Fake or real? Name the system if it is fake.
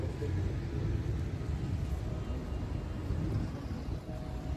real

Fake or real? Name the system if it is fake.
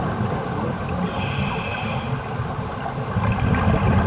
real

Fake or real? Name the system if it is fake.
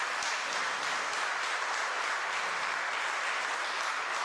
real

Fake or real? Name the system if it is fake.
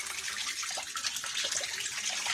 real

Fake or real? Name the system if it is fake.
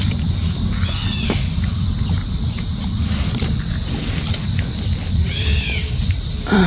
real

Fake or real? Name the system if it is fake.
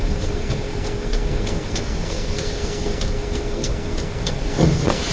fake, codec, SNAC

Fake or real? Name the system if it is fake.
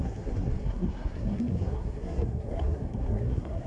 fake, codec, SNAC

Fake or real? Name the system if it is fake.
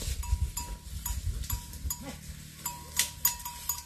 real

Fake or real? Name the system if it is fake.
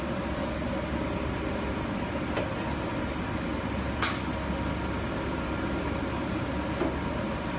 real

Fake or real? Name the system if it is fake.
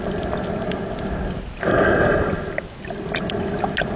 real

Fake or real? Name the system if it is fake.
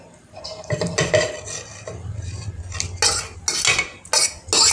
real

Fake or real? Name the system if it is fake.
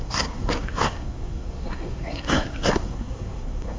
fake, codec, SNAC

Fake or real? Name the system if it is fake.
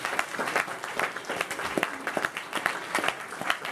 real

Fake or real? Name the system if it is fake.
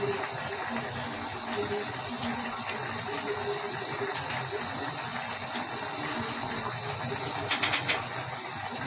real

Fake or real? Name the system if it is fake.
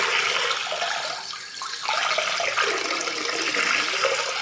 real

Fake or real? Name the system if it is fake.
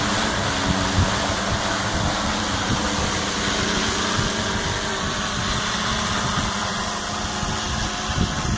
real